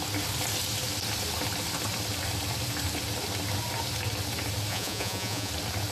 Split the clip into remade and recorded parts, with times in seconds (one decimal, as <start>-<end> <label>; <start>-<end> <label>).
0.0-4.7 recorded; 4.7-5.5 remade; 5.5-5.9 recorded